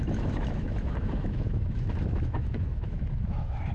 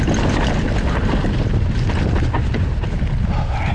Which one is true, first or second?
second